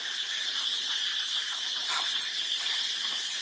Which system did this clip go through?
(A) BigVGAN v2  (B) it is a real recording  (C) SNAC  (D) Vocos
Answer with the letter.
A